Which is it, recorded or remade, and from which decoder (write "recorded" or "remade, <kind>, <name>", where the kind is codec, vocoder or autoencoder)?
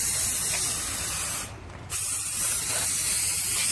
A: recorded